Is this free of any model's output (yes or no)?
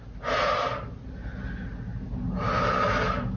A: yes